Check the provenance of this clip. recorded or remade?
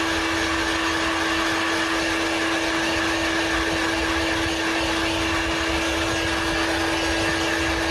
recorded